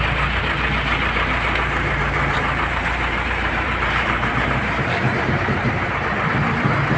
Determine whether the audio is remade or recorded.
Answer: remade